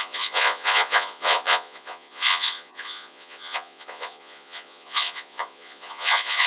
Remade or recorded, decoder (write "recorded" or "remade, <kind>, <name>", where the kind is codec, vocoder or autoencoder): remade, vocoder, Vocos